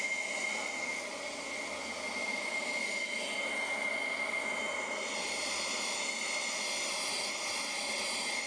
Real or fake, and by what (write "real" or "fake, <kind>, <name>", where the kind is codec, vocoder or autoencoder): real